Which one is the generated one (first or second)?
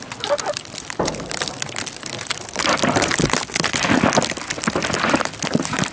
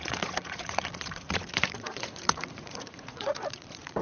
second